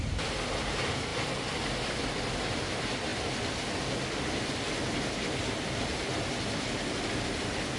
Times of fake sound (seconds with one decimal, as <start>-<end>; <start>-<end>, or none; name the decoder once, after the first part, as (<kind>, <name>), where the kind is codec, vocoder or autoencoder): none